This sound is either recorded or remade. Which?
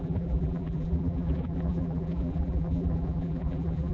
remade